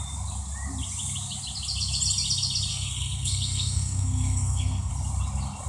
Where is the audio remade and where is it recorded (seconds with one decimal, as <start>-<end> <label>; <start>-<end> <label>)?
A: 0.0-2.7 recorded; 2.7-4.9 remade; 4.9-5.7 recorded